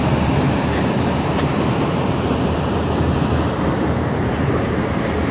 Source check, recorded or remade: remade